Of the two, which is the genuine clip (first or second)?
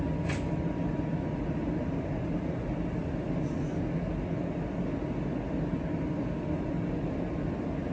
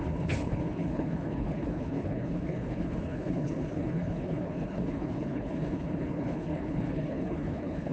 first